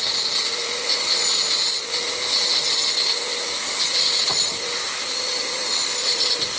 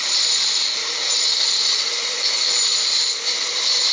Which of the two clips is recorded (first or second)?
first